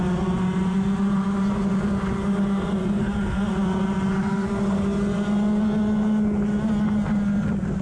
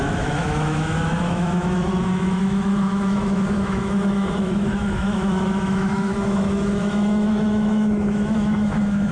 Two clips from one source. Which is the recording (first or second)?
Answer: first